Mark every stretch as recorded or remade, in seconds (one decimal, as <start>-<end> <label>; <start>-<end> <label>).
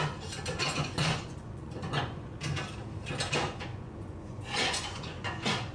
0.0-0.5 recorded; 0.5-2.3 remade; 2.3-3.3 recorded; 3.3-5.7 remade